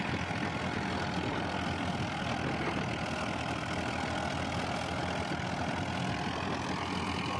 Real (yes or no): yes